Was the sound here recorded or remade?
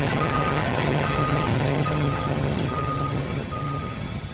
remade